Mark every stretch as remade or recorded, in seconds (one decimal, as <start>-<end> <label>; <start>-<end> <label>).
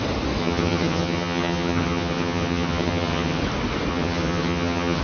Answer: 0.0-0.4 recorded; 0.4-3.4 remade; 3.4-3.9 recorded; 3.9-5.0 remade